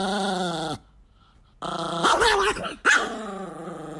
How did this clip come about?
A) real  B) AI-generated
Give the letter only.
A